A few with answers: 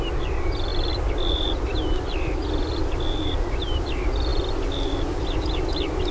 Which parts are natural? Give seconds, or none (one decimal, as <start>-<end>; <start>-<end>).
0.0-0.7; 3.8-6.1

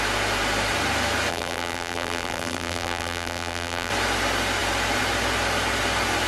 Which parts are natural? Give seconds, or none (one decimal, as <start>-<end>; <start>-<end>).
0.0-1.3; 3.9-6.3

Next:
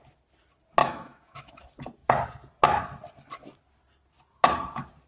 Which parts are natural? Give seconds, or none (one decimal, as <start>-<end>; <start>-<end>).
0.0-0.8; 1.5-5.1

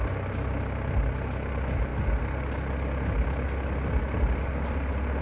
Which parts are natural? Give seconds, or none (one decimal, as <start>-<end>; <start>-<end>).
0.0-5.2